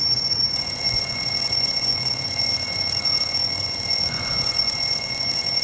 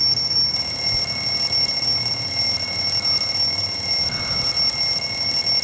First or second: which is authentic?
second